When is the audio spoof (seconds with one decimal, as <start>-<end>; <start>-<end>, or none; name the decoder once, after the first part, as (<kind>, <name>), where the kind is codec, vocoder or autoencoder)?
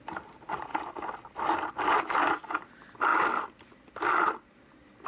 none